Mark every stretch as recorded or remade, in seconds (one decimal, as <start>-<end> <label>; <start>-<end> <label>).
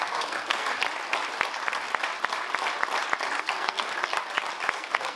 0.0-0.7 remade; 0.7-3.4 recorded; 3.4-3.9 remade; 3.9-4.7 recorded; 4.7-5.2 remade